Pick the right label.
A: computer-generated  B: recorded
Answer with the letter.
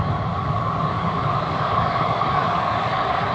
A